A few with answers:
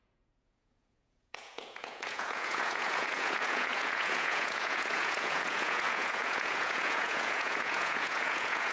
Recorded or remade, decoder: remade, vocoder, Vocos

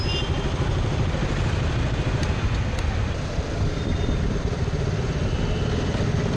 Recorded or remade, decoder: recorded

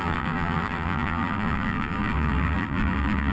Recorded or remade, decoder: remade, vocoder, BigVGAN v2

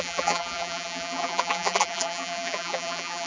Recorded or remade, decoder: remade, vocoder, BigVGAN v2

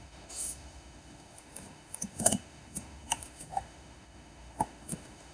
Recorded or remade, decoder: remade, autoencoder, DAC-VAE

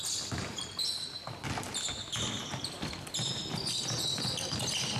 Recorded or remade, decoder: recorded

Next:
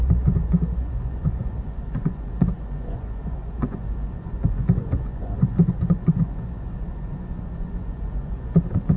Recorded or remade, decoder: remade, vocoder, Vocos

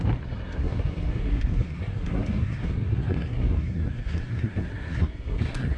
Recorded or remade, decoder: remade, codec, SNAC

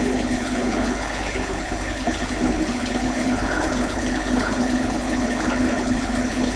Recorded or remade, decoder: remade, codec, HILCodec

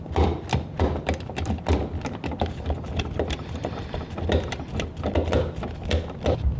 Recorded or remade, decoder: recorded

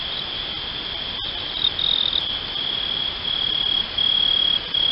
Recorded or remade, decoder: recorded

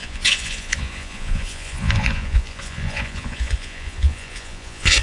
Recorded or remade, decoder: remade, vocoder, Vocos